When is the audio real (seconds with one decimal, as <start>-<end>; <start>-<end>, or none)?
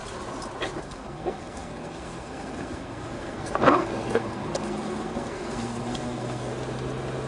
0.0-0.8; 6.5-7.3